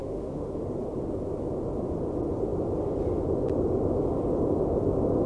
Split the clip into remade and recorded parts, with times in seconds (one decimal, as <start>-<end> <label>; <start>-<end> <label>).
0.0-0.6 remade; 0.6-5.3 recorded